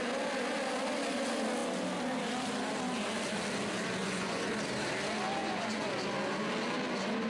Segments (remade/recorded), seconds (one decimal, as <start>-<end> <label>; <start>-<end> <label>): 0.0-4.0 recorded; 4.0-4.5 remade; 4.5-5.4 recorded; 5.4-5.9 remade; 5.9-7.3 recorded

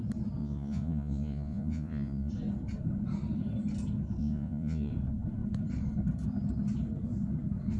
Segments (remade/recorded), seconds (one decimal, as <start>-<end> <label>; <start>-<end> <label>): 0.0-0.4 recorded; 0.4-2.3 remade; 2.3-4.2 recorded; 4.2-4.9 remade; 4.9-7.8 recorded

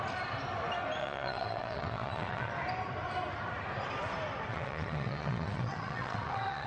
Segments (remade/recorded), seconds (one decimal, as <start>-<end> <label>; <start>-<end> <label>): 0.0-1.0 recorded; 1.0-2.5 remade; 2.5-4.5 recorded; 4.5-6.7 remade

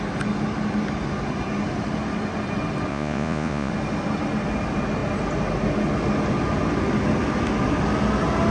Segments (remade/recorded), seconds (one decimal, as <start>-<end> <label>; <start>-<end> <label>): 0.0-2.9 recorded; 2.9-3.7 remade; 3.7-8.5 recorded

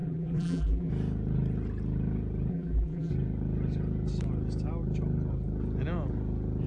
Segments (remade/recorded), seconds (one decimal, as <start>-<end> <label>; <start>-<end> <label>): 0.0-0.9 remade; 0.9-2.5 recorded; 2.5-3.1 remade; 3.1-6.7 recorded

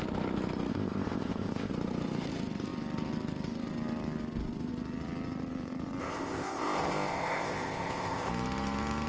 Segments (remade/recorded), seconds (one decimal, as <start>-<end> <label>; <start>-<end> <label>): 0.0-0.7 recorded; 0.7-1.7 remade; 1.7-6.0 recorded; 6.0-8.3 remade; 8.3-9.1 recorded

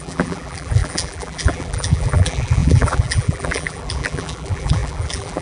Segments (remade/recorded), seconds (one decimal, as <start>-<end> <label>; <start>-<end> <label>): 0.0-5.4 remade

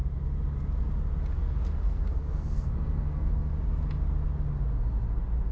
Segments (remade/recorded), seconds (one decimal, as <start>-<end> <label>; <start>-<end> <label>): 0.0-1.4 recorded; 1.4-3.5 remade; 3.5-5.5 recorded